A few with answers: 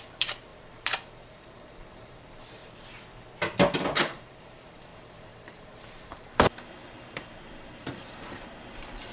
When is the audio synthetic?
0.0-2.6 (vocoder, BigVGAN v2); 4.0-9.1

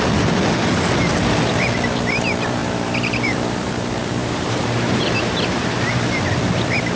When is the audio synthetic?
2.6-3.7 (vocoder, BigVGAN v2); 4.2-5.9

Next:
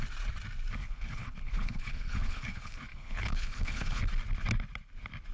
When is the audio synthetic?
0.8-4.0 (codec, HILCodec)

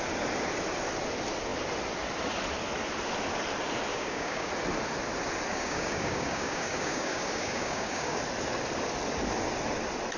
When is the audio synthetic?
3.9-4.5 (codec, DAC); 5.5-8.2